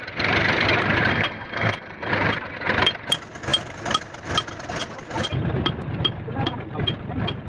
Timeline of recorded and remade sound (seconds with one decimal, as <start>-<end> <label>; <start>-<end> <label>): 0.0-1.1 recorded; 1.1-2.1 remade; 2.1-7.5 recorded